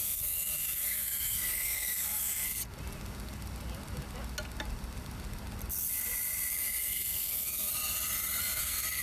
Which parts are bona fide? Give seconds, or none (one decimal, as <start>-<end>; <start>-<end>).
2.6-6.5; 7.7-8.4